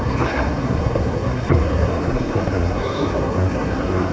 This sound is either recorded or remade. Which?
remade